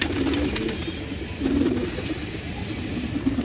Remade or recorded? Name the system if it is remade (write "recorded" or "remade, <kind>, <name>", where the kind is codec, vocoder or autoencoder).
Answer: recorded